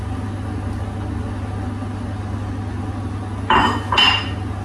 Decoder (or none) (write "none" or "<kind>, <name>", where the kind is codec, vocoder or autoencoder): none